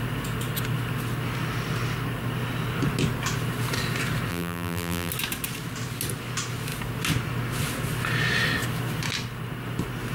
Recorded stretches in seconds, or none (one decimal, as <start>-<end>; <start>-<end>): 0.0-4.3; 5.1-10.1